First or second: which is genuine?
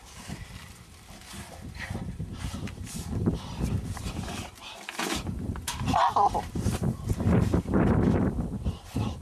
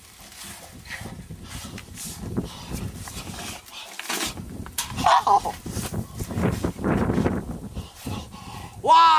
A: second